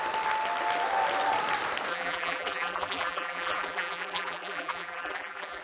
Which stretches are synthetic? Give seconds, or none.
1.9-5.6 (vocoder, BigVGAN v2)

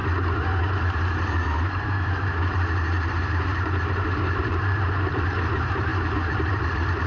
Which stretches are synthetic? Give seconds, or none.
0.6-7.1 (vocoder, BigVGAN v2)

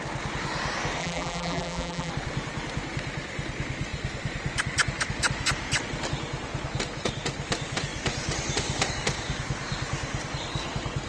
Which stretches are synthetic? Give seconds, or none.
1.0-2.1 (vocoder, BigVGAN v2)

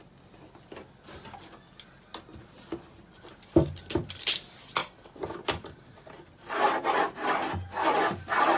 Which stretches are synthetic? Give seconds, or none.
none

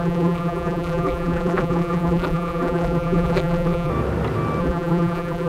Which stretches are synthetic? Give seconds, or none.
0.0-3.9 (vocoder, BigVGAN v2); 4.6-5.5

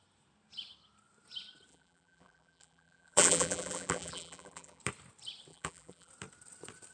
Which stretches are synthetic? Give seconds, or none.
1.7-4.8 (vocoder, BigVGAN v2); 5.5-6.1